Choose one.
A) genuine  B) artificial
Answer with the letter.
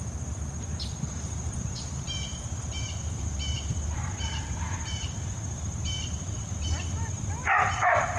B